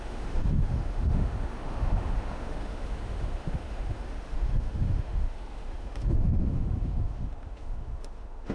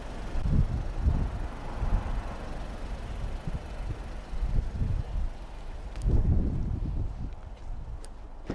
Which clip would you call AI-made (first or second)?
first